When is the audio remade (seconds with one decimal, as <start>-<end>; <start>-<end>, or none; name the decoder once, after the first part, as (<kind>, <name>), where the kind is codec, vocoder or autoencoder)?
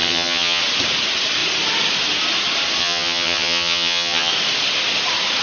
0.0-0.6 (vocoder, HiFi-GAN); 2.8-4.3